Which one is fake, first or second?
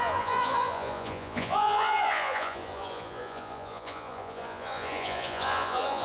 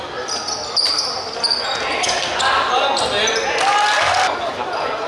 first